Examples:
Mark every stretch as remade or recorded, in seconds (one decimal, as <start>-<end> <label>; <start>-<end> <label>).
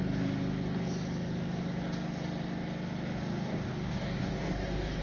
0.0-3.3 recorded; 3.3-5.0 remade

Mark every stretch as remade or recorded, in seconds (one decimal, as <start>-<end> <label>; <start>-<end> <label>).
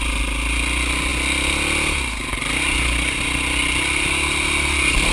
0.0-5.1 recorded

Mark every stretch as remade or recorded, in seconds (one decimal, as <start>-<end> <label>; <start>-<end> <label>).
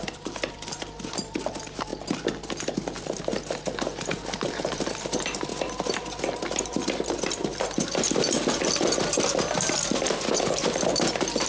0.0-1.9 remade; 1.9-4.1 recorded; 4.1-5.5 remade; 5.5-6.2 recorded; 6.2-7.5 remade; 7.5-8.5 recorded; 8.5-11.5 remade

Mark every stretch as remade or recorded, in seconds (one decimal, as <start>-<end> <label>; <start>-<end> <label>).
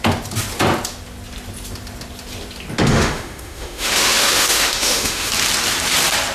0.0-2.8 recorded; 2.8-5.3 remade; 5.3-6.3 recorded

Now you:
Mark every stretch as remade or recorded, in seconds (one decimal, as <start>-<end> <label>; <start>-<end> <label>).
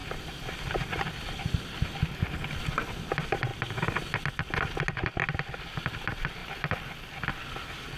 0.0-8.0 recorded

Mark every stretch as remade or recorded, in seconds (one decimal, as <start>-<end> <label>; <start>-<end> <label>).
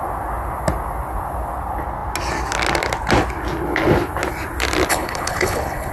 0.0-4.9 recorded; 4.9-5.9 remade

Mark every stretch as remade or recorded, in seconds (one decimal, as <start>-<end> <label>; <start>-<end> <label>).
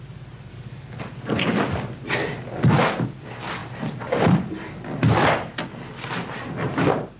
0.0-0.5 recorded; 0.5-1.0 remade; 1.0-7.2 recorded